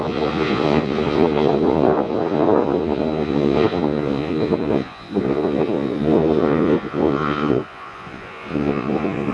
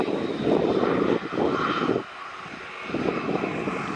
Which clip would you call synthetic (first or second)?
first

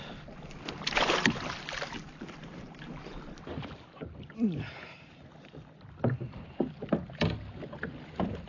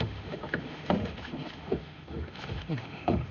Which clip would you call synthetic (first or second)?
second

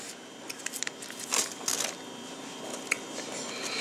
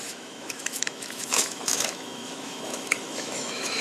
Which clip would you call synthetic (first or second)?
second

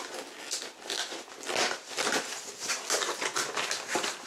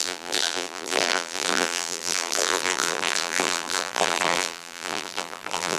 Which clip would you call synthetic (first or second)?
second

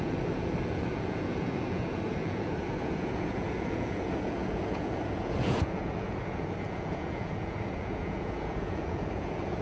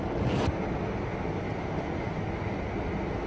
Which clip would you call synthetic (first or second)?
first